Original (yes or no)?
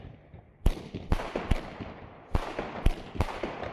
yes